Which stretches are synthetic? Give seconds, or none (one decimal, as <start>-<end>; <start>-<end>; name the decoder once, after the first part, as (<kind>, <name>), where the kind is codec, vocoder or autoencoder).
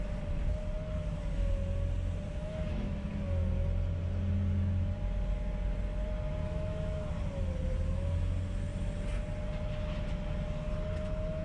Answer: 2.4-3.1 (autoencoder, DAC-VAE); 6.4-7.1